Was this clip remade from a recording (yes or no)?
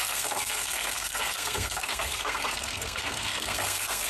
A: yes